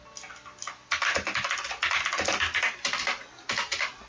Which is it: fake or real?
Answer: real